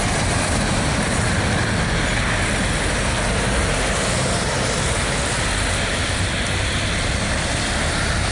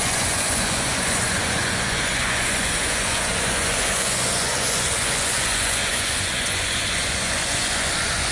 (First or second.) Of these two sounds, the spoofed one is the second